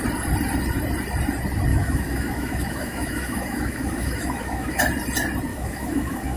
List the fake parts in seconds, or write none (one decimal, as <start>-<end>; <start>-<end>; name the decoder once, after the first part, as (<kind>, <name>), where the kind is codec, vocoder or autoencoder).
1.7-4.8 (autoencoder, DAC-VAE); 5.5-6.4